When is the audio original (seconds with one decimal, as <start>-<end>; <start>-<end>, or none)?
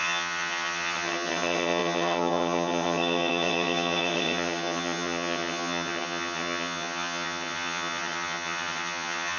none